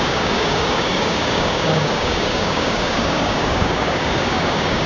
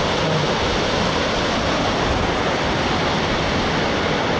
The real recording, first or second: second